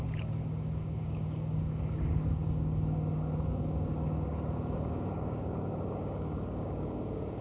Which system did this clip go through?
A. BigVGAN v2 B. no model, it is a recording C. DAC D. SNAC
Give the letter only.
C